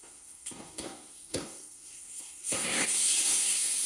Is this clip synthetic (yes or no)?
yes